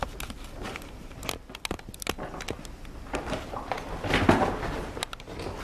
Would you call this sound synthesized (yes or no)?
no